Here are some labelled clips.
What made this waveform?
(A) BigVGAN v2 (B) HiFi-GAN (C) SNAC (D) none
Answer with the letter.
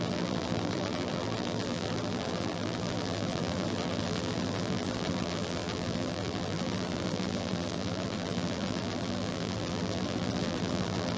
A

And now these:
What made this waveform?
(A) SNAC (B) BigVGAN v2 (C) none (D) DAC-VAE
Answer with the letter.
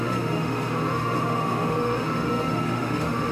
D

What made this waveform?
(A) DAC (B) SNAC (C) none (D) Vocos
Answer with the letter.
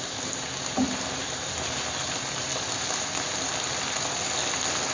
C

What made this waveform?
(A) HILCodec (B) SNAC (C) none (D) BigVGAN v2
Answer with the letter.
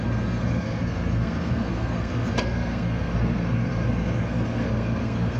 B